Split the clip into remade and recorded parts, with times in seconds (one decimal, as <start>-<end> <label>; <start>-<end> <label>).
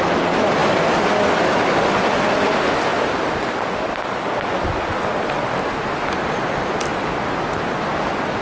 0.0-8.4 recorded